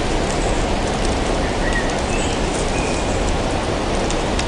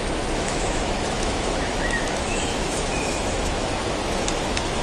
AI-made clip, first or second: second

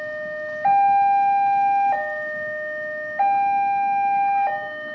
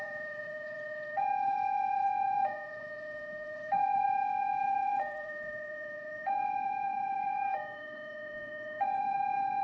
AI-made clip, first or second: second